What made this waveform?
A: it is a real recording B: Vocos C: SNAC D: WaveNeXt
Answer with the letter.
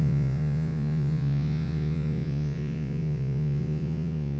B